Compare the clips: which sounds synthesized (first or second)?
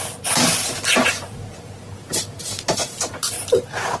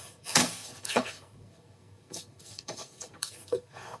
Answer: second